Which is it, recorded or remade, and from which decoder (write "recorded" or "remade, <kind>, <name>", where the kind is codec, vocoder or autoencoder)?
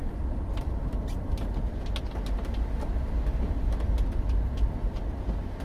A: recorded